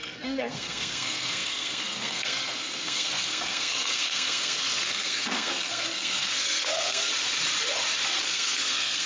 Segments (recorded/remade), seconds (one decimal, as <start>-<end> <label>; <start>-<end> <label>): 0.0-7.1 remade; 7.1-8.2 recorded; 8.2-9.1 remade